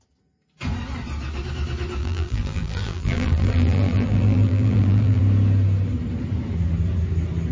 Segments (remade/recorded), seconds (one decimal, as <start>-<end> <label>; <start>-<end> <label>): 0.0-2.0 recorded; 2.0-5.2 remade; 5.2-7.5 recorded